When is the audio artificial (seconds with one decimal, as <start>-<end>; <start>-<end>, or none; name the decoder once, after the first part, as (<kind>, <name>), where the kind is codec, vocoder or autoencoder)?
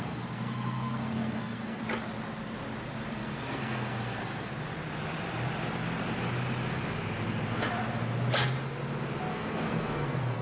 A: 0.0-1.8 (codec, SNAC); 3.1-4.5; 9.3-10.4